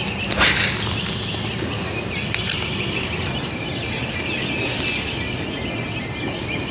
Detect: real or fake real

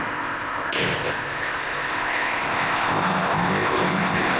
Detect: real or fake fake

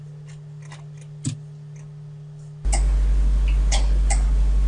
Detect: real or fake real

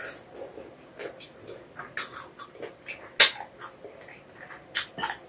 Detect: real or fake real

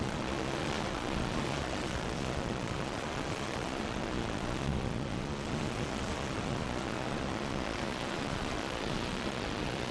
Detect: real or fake fake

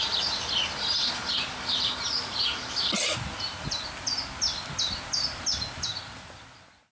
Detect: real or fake real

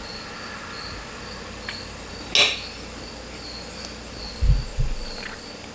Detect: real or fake real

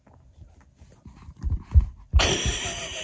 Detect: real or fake real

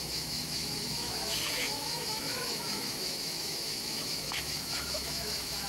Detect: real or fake fake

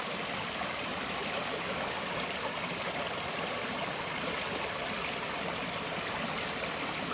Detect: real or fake real